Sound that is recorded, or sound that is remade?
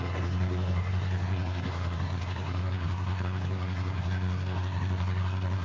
remade